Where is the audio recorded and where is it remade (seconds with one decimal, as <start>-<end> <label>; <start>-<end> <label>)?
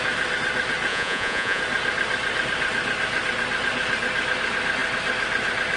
0.0-0.9 recorded; 0.9-1.6 remade; 1.6-5.8 recorded